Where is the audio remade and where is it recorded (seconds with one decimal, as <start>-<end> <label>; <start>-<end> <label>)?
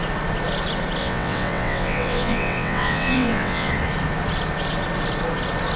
0.0-1.0 recorded; 1.0-3.7 remade; 3.7-5.8 recorded